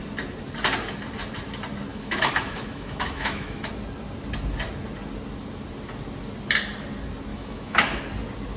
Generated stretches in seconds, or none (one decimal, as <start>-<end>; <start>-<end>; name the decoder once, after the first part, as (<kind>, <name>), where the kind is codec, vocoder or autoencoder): 1.9-3.7 (autoencoder, DAC-VAE); 7.3-8.0